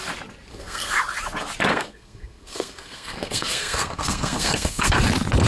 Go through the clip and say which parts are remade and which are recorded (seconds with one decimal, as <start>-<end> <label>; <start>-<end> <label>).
0.0-0.5 recorded; 0.5-1.0 remade; 1.0-1.7 recorded; 1.7-5.0 remade; 5.0-5.5 recorded